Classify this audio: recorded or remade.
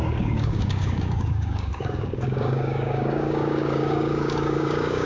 remade